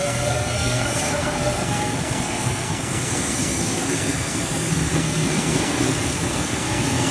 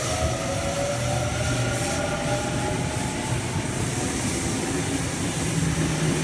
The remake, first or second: first